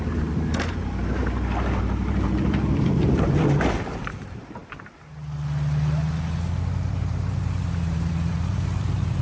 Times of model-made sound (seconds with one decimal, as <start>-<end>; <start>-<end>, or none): 0.0-1.2; 1.8-4.6; 6.9-9.2